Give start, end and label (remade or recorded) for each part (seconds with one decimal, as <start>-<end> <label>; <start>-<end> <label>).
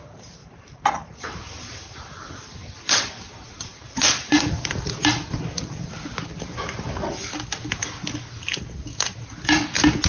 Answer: 0.0-0.4 recorded; 0.4-4.8 remade; 4.8-6.1 recorded; 6.1-6.9 remade; 6.9-10.1 recorded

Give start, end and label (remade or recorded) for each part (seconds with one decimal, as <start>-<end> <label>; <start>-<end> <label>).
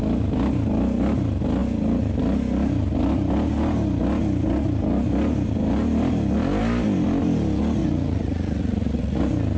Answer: 0.0-7.8 recorded; 7.8-9.2 remade; 9.2-9.6 recorded